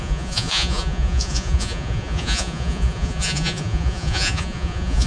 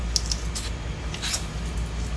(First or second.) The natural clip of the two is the second